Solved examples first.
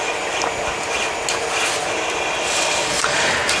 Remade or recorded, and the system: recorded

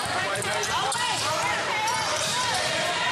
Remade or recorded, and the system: remade, vocoder, BigVGAN v2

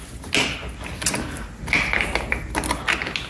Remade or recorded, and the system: recorded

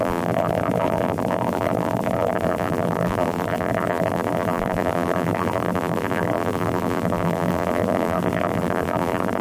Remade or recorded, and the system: remade, vocoder, BigVGAN v2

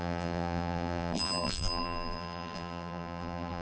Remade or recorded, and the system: remade, vocoder, BigVGAN v2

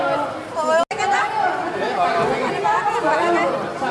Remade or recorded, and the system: recorded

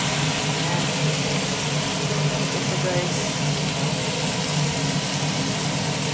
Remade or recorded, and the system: recorded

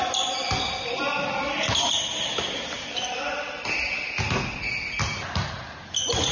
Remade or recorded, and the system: recorded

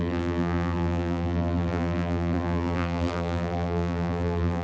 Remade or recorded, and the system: remade, vocoder, BigVGAN v2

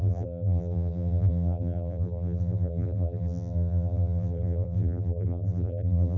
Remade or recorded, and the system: remade, vocoder, BigVGAN v2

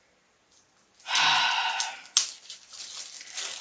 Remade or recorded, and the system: recorded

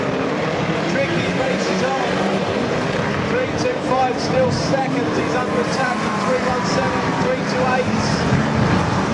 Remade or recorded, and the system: remade, vocoder, BigVGAN v2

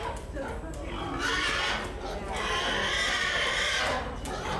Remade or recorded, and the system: remade, vocoder, BigVGAN v2